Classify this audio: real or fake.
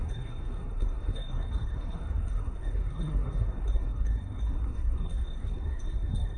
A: fake